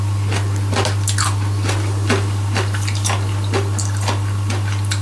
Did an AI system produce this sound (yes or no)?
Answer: no